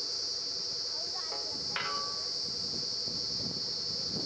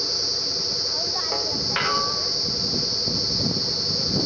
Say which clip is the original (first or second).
first